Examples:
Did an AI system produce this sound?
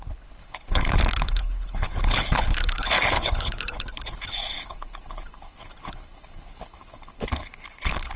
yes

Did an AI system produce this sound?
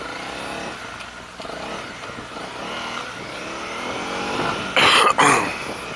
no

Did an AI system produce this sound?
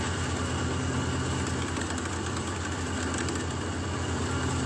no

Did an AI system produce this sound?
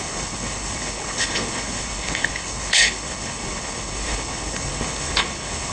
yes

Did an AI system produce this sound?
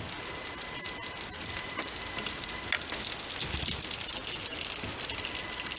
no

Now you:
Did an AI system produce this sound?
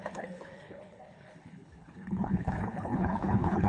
yes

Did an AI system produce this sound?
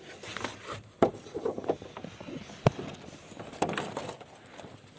no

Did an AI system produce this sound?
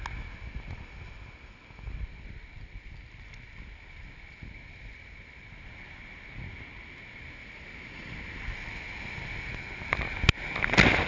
no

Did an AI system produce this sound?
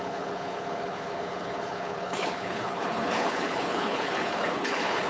yes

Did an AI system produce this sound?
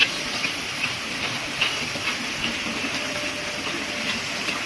no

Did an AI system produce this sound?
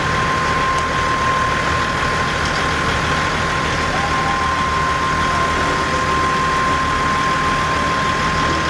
no